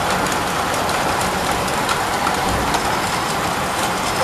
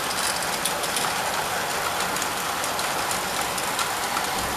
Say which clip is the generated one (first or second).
first